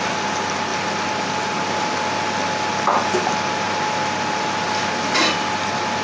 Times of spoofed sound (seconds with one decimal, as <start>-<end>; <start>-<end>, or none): none